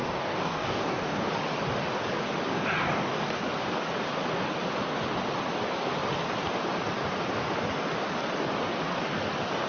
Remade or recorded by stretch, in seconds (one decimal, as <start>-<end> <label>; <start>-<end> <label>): 0.0-1.3 remade; 1.3-2.5 recorded; 2.5-3.4 remade; 3.4-9.7 recorded